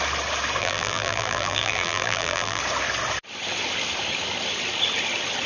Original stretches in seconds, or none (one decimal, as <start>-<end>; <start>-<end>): 0.0-0.6; 2.6-5.5